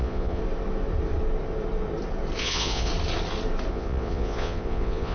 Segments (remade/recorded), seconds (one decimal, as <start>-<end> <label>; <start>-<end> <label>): 0.0-0.4 remade; 0.4-2.4 recorded; 2.4-2.9 remade; 2.9-3.7 recorded; 3.7-5.1 remade